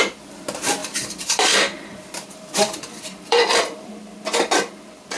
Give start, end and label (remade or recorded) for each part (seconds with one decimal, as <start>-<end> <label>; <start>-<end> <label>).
0.0-0.8 recorded; 0.8-3.9 remade; 3.9-5.2 recorded